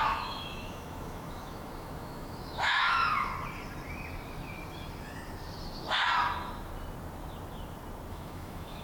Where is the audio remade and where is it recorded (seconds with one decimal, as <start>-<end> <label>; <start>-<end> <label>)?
0.0-3.3 remade; 3.3-8.1 recorded; 8.1-8.8 remade